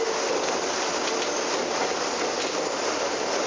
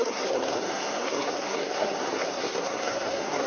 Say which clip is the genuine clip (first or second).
first